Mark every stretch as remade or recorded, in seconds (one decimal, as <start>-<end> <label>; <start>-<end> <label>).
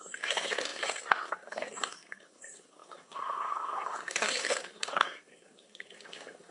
0.0-6.5 remade